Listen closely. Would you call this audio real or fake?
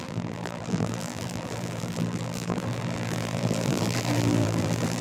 fake